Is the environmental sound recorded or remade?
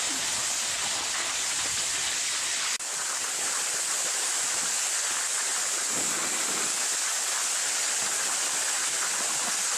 recorded